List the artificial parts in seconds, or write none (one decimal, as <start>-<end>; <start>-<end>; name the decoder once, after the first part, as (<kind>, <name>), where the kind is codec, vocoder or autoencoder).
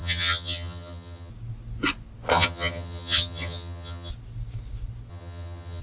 0.0-1.3 (vocoder, HiFi-GAN); 2.3-4.1; 5.1-5.8